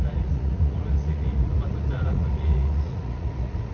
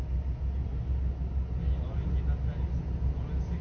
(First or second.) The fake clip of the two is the first